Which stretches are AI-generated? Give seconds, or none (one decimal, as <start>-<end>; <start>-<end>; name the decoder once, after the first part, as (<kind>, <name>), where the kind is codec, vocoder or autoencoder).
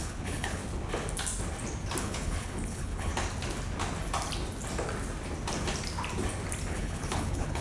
0.0-0.6 (codec, HILCodec); 2.0-3.1; 6.7-7.6